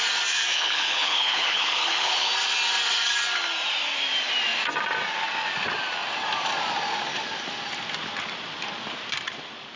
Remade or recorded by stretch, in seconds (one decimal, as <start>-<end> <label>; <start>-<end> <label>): 0.0-0.5 recorded; 0.5-2.3 remade; 2.3-9.8 recorded